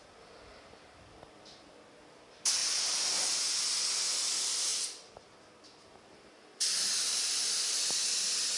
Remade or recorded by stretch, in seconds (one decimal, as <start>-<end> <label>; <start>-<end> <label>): 0.0-8.6 recorded